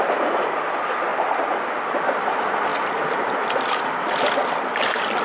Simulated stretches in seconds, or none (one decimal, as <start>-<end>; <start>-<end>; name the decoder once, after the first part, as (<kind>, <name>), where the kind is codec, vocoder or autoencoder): none